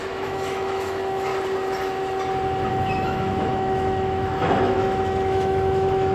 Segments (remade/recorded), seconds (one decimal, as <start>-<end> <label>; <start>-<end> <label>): 0.0-1.3 remade; 1.3-2.7 recorded; 2.7-6.1 remade